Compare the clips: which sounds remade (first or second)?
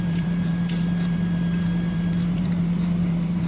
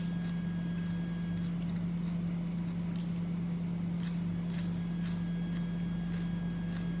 first